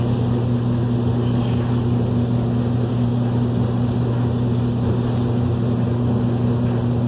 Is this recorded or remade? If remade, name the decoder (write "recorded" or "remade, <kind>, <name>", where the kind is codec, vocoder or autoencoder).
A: recorded